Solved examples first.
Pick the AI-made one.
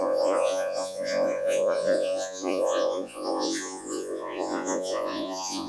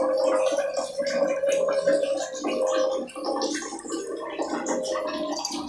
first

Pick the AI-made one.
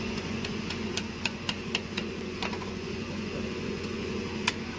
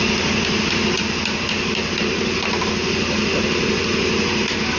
first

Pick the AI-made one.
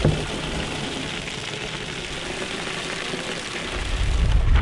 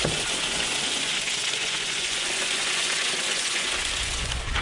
second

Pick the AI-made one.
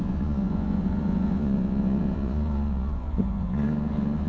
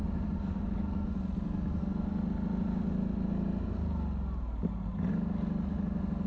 first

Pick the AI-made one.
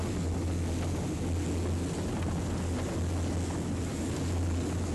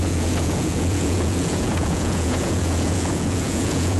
second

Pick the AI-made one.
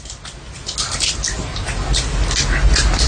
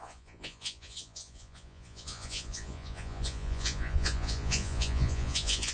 second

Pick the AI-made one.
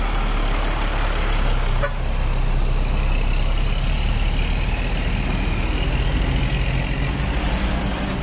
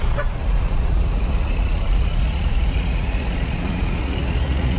second